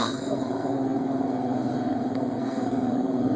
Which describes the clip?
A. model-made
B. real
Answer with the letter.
A